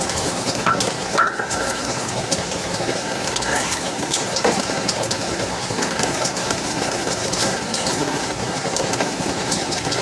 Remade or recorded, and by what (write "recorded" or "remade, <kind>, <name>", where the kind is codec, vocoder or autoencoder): remade, codec, SNAC